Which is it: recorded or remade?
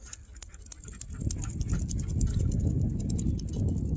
recorded